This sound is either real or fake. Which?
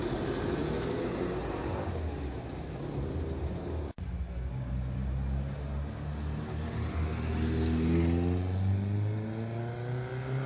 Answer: real